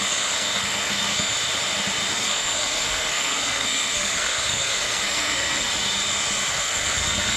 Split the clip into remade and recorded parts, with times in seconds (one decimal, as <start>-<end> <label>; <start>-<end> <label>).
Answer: 0.0-1.3 remade; 1.3-2.1 recorded; 2.1-5.7 remade; 5.7-6.5 recorded; 6.5-7.4 remade